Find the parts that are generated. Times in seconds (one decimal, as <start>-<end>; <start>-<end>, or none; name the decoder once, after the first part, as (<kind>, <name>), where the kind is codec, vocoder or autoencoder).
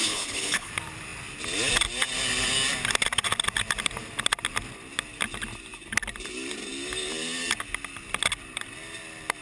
0.0-0.7 (codec, HILCodec)